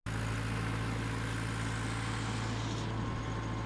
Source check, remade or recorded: recorded